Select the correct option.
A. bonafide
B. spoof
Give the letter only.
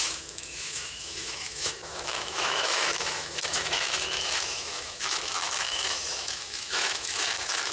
B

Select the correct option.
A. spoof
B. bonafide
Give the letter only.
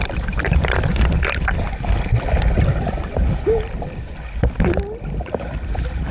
B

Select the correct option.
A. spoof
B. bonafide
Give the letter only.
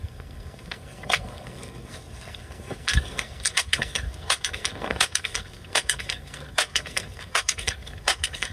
A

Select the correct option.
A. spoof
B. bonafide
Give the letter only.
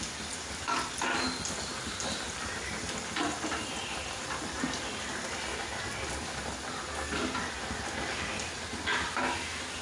A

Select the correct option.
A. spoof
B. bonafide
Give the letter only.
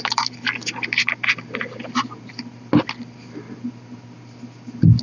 B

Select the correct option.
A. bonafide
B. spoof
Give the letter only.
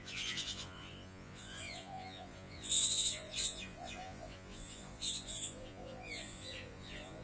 B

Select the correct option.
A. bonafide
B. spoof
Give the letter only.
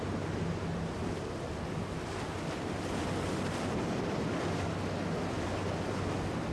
A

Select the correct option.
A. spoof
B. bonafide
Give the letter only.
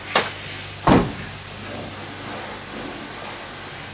B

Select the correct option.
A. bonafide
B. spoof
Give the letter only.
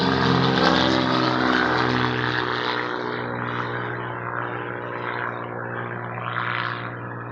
A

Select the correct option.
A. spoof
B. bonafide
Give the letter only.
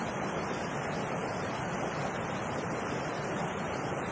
B